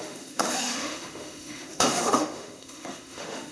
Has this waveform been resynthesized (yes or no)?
yes